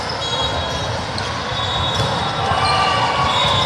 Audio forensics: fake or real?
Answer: real